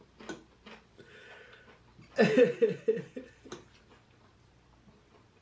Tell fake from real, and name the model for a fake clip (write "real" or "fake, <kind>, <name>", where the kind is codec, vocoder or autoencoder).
real